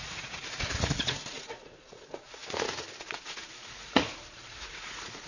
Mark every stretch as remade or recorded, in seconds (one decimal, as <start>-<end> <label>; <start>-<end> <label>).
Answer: 0.0-2.4 remade; 2.4-3.0 recorded; 3.0-5.3 remade